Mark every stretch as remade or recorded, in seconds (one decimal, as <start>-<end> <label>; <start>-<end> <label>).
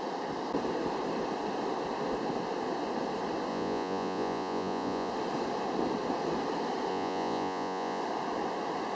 0.0-3.5 recorded; 3.5-5.1 remade; 5.1-6.9 recorded; 6.9-8.0 remade; 8.0-8.9 recorded